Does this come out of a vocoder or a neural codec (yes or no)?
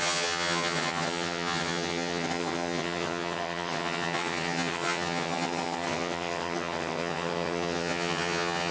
yes